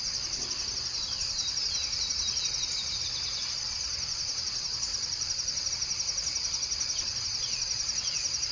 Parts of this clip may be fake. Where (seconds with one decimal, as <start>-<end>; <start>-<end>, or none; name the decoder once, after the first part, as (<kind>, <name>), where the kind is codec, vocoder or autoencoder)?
1.4-2.4 (vocoder, BigVGAN v2); 4.9-5.7